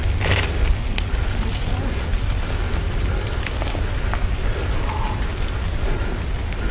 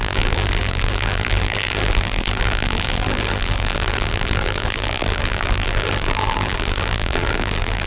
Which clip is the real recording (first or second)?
first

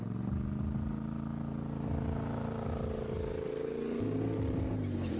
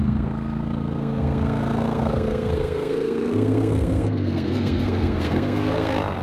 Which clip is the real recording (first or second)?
first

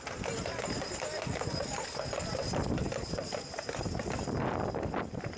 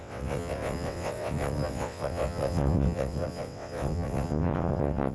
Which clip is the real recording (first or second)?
first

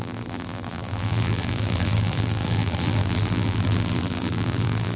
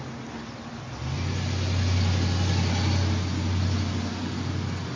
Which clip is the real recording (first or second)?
second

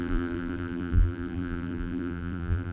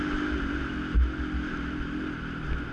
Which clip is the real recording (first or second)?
second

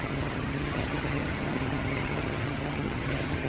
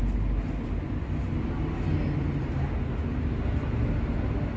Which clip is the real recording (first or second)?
second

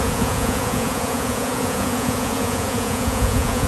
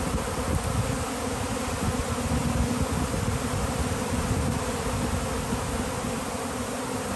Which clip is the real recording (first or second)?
second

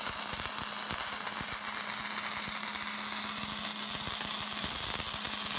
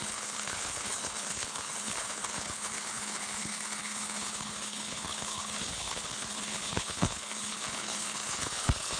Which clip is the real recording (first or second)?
first